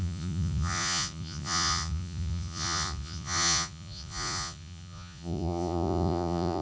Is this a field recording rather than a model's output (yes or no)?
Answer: no